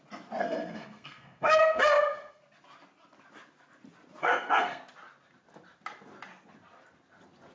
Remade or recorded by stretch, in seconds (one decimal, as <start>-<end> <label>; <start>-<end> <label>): 0.0-0.4 recorded; 0.4-2.4 remade; 2.4-4.2 recorded; 4.2-4.8 remade; 4.8-7.5 recorded